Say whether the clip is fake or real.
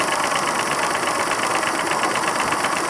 real